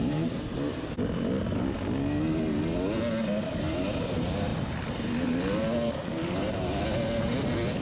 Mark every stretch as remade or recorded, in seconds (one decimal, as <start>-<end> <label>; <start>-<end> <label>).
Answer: 0.0-4.5 recorded; 4.5-6.8 remade; 6.8-7.8 recorded